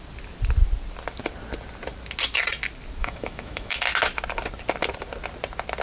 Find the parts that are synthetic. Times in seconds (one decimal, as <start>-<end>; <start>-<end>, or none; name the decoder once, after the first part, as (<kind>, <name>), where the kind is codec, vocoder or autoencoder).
3.0-3.8 (autoencoder, DAC-VAE)